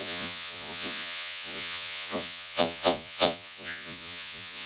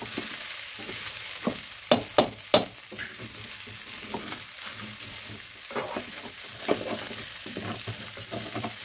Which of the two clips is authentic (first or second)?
second